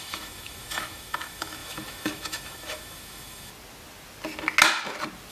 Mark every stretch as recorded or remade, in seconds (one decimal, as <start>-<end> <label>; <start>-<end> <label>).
0.0-3.5 remade; 3.5-5.3 recorded